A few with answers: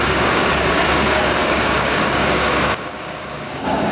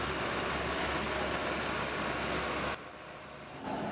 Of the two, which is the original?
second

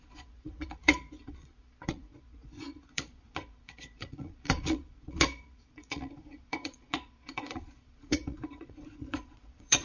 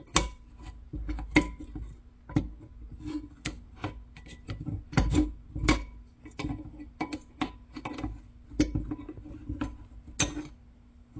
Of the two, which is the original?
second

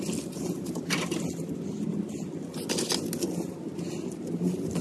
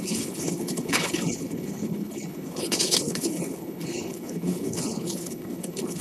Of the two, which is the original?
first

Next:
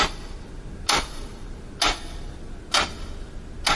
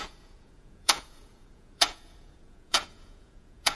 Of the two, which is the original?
first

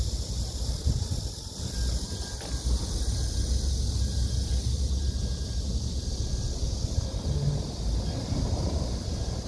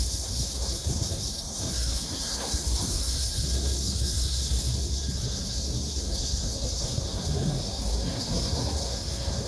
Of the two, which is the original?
first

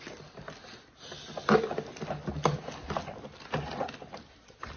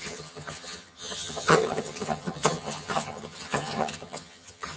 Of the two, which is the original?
first